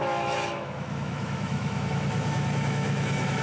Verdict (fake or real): fake